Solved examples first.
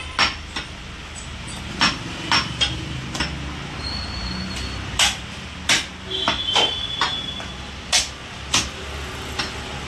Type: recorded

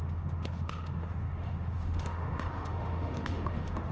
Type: remade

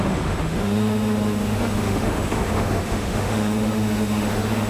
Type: remade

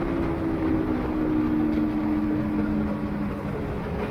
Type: recorded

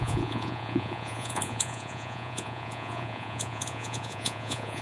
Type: remade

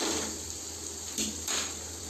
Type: remade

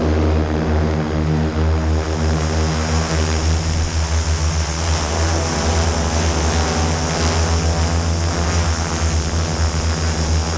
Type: recorded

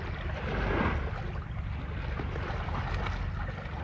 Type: recorded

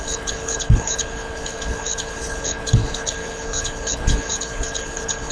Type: remade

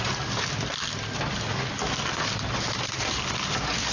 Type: recorded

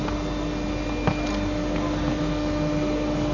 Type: recorded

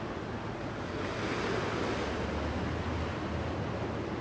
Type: recorded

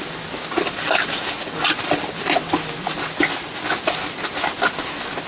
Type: recorded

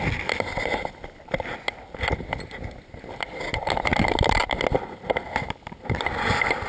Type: recorded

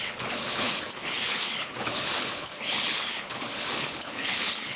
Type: remade